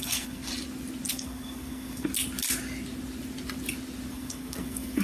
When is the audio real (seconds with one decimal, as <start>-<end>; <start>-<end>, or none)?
0.5-1.1; 2.1-4.1